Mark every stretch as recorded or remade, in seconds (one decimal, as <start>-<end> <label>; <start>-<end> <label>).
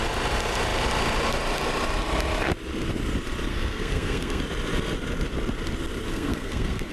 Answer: 0.0-3.5 recorded; 3.5-4.4 remade; 4.4-6.1 recorded; 6.1-6.9 remade